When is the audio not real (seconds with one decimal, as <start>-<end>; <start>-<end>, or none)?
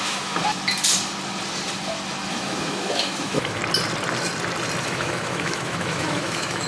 0.0-0.4; 2.3-3.6; 4.8-6.7